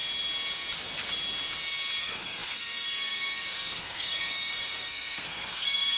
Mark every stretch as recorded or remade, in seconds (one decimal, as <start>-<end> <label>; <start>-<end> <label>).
0.0-2.0 recorded; 2.0-6.0 remade